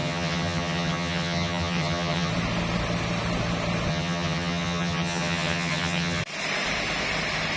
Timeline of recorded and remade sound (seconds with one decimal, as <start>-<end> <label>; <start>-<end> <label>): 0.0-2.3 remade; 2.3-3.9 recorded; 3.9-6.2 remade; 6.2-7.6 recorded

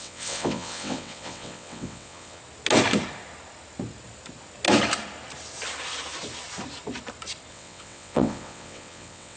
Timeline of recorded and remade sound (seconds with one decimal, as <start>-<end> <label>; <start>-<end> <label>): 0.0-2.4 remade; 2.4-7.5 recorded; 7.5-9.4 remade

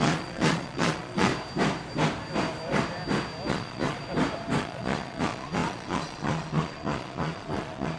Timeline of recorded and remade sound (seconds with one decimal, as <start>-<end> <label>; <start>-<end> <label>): 0.0-1.3 remade; 1.3-3.5 recorded; 3.5-4.0 remade; 4.0-4.6 recorded; 4.6-8.0 remade

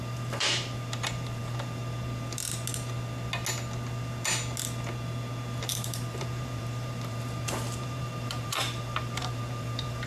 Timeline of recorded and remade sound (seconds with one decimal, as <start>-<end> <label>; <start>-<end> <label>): 0.0-1.8 remade; 1.8-5.7 recorded; 5.7-10.1 remade

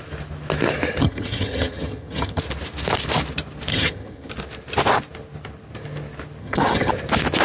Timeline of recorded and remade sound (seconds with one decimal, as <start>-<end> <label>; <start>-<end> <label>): 0.0-1.0 recorded; 1.0-2.4 remade; 2.4-3.7 recorded; 3.7-4.3 remade; 4.3-6.4 recorded; 6.4-6.9 remade; 6.9-7.4 recorded

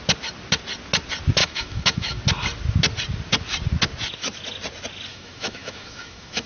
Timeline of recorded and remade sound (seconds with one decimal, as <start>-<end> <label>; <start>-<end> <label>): 0.0-1.4 recorded; 1.4-2.2 remade; 2.2-5.1 recorded; 5.1-6.5 remade

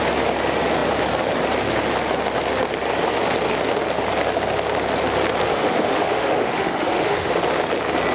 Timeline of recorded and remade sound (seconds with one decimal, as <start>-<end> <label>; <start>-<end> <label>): 0.0-5.5 recorded; 5.5-7.4 remade; 7.4-8.1 recorded

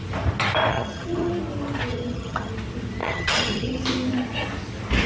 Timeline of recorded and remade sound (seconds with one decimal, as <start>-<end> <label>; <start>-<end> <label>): 0.0-0.7 recorded; 0.7-1.3 remade; 1.3-1.9 recorded; 1.9-2.5 remade; 2.5-3.0 recorded; 3.0-3.8 remade; 3.8-5.1 recorded